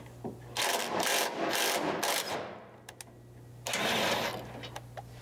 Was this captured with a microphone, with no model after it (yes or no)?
yes